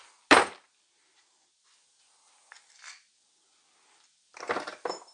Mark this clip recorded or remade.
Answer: recorded